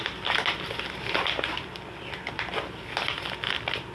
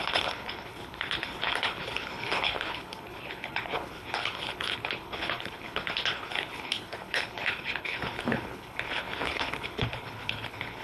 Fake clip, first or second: second